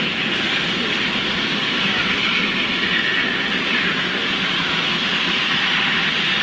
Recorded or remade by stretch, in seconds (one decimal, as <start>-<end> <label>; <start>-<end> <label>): 0.0-5.0 recorded; 5.0-5.8 remade; 5.8-6.4 recorded